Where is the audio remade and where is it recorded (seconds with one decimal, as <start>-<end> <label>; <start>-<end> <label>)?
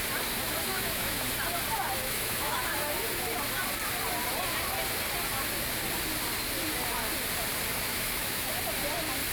0.0-0.7 recorded; 0.7-1.3 remade; 1.3-2.0 recorded; 2.0-2.6 remade; 2.6-7.9 recorded; 7.9-8.5 remade; 8.5-9.3 recorded